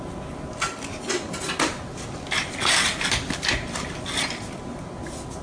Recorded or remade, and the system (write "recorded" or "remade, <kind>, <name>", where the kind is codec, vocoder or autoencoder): recorded